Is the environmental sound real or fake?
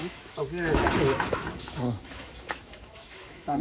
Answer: fake